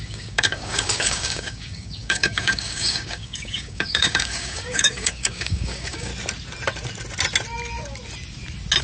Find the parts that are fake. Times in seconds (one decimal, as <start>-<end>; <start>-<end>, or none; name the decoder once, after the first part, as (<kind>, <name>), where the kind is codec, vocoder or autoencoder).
0.0-6.1 (codec, DAC)